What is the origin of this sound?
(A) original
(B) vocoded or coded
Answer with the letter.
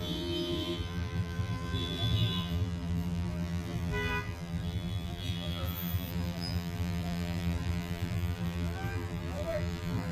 B